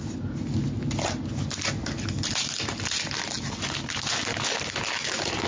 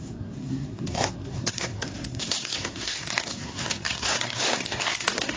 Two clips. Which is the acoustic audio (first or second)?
first